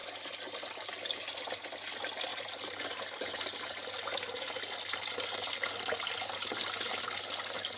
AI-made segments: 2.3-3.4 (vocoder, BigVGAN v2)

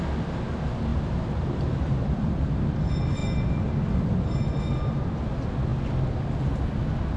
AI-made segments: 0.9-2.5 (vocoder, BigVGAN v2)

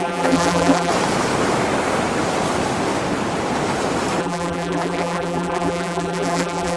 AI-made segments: 0.0-0.9 (vocoder, BigVGAN v2); 4.2-6.8